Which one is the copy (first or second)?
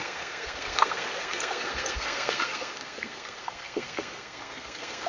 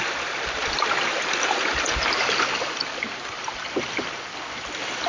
first